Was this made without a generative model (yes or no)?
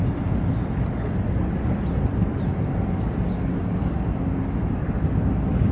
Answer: yes